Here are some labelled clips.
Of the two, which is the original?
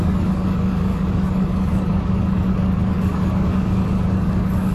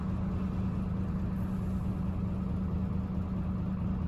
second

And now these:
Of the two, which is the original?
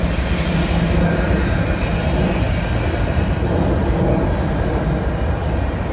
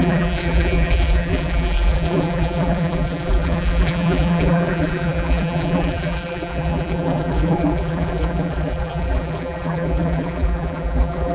first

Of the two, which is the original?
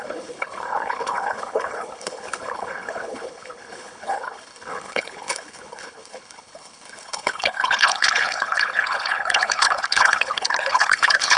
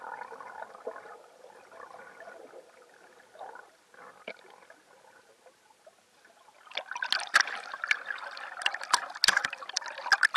second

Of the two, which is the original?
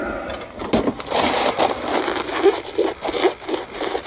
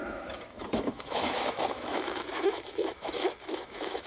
first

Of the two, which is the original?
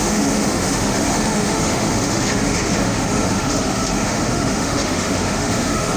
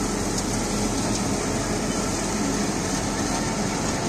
second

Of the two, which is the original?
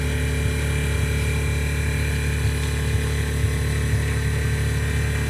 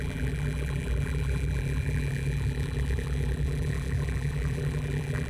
first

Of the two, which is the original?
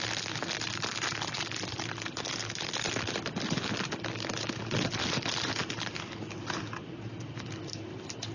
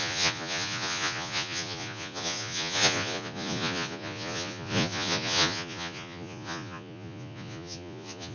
first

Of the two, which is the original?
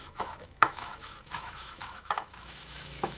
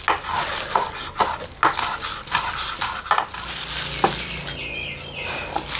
second